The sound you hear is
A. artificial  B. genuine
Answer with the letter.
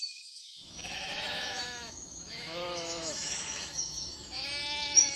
A